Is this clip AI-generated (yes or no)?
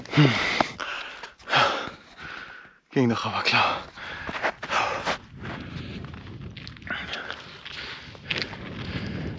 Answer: no